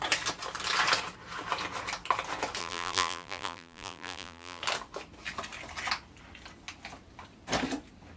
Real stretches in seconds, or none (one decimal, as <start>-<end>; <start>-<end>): 0.0-2.6; 4.6-8.2